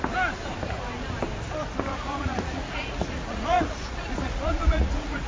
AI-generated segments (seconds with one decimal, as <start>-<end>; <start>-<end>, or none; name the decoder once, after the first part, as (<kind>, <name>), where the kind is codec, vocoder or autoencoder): 1.9-5.3 (vocoder, Vocos)